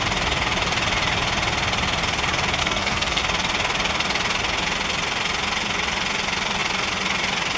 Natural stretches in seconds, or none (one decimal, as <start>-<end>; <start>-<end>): 0.0-2.6; 3.2-7.6